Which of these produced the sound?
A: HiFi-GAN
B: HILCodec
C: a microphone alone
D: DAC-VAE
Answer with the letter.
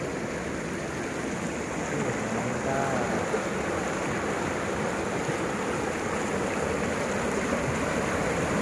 C